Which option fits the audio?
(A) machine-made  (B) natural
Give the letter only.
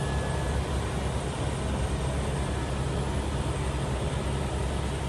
B